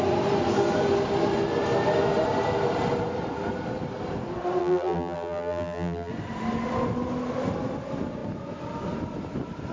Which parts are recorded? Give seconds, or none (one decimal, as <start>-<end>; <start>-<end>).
0.0-4.6; 6.1-9.7